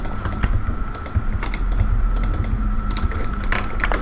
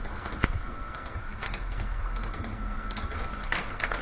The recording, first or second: first